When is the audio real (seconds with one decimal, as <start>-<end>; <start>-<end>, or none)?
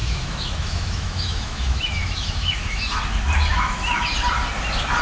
3.0-3.5; 4.1-5.0